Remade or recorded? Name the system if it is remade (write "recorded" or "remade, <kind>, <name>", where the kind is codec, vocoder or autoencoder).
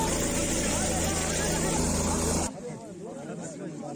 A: recorded